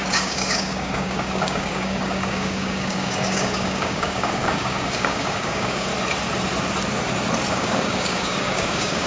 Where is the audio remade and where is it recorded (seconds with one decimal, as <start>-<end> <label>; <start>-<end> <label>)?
0.0-5.9 remade; 5.9-7.5 recorded; 7.5-9.1 remade